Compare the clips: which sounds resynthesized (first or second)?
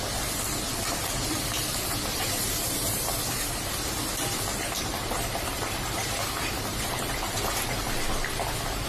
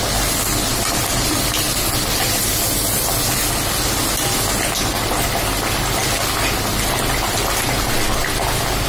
first